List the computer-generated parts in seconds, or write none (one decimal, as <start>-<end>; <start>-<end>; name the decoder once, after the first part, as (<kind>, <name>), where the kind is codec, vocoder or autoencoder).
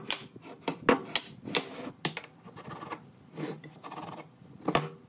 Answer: none